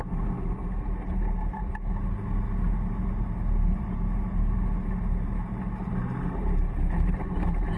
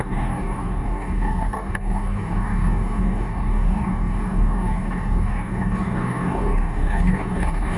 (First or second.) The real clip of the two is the first